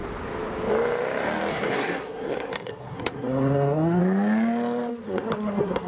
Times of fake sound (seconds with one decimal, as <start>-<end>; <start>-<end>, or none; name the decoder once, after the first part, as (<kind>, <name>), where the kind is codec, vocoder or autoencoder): 1.5-4.0 (codec, SNAC); 4.9-5.9